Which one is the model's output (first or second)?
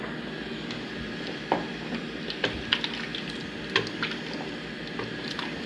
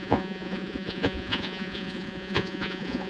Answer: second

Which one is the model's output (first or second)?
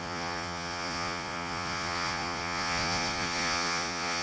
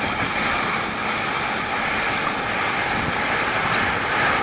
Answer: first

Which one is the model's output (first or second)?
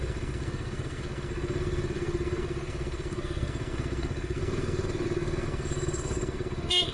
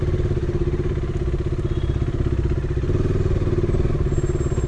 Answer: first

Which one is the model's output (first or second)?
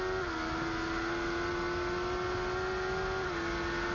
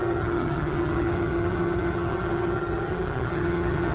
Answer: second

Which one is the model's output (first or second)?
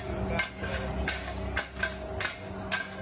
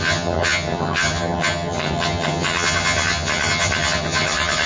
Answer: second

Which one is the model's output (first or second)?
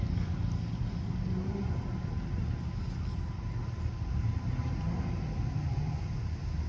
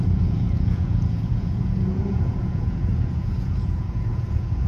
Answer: second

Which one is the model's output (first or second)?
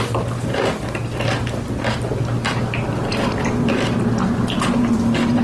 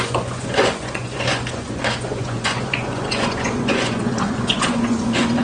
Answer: second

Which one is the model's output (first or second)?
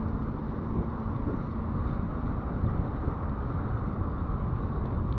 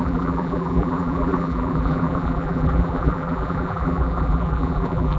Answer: second